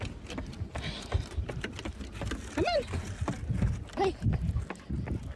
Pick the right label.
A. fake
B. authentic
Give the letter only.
B